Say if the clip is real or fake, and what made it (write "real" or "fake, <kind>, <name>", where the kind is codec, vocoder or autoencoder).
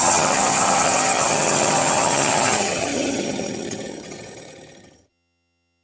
fake, vocoder, HiFi-GAN